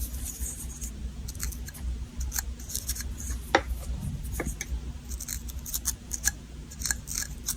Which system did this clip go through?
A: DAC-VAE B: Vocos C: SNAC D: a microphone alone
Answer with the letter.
D